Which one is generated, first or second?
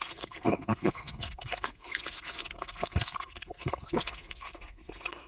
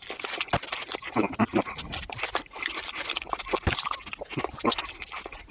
first